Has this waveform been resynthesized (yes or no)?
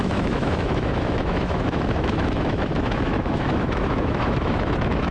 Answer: yes